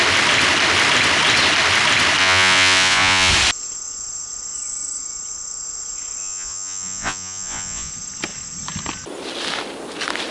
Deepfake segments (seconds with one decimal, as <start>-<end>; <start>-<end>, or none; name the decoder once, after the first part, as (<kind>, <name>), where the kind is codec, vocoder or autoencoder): 2.2-3.3 (vocoder, Vocos); 6.2-7.9